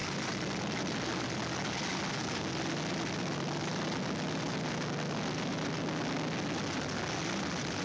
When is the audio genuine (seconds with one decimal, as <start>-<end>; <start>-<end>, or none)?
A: 0.0-7.8